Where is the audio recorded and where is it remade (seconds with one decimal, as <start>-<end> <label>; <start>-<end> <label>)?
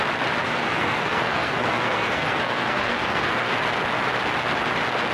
0.0-0.4 recorded; 0.4-3.5 remade; 3.5-5.1 recorded